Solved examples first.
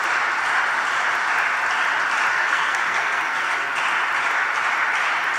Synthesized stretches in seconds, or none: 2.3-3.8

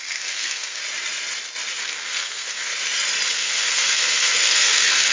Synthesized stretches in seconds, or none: 0.0-0.8; 1.8-2.7; 3.3-5.1